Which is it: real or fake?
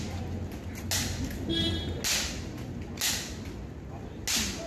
real